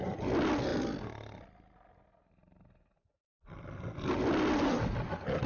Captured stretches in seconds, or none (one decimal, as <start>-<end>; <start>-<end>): 0.0-5.5